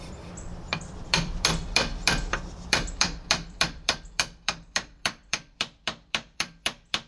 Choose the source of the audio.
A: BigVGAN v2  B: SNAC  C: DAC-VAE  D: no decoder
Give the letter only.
A